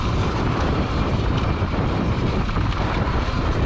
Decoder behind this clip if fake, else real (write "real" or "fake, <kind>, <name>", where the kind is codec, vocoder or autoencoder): fake, vocoder, BigVGAN v2